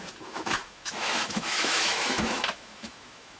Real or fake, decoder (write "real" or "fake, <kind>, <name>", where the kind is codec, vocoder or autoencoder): fake, autoencoder, DAC-VAE